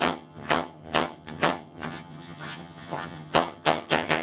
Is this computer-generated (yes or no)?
yes